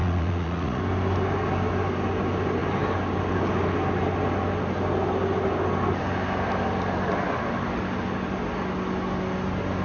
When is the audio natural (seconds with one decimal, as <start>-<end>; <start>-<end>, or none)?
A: 0.8-9.8